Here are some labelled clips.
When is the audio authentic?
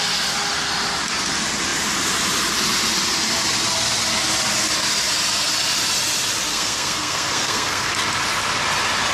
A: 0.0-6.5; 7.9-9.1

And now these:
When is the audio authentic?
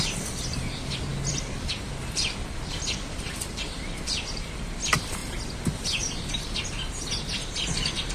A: 5.2-8.1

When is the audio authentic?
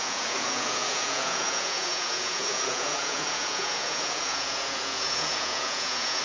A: none